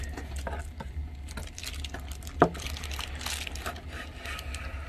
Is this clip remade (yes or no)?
no